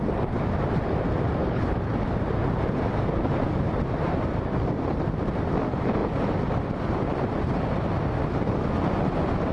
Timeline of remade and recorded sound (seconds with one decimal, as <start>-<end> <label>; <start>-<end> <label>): 0.0-9.5 recorded